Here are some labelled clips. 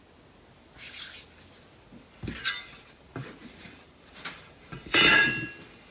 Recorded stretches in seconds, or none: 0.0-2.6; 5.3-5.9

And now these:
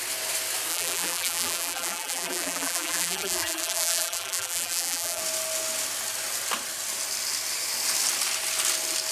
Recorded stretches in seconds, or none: 0.0-0.7; 5.2-9.1

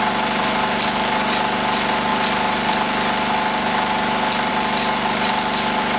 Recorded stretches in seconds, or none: 0.0-6.0

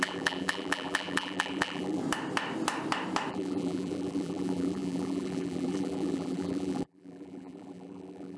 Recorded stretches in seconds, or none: 2.0-3.3

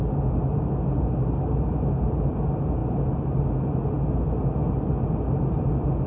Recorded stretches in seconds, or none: 0.0-4.6; 5.1-6.1

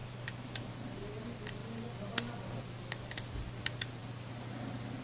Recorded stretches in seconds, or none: 0.7-5.0

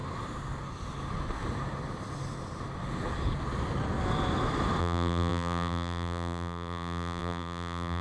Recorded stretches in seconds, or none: 0.0-4.8

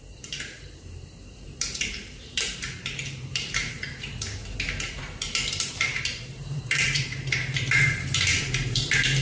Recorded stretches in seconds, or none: 4.4-5.0